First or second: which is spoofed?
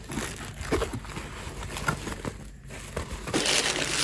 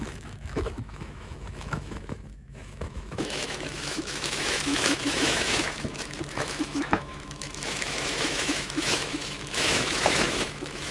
second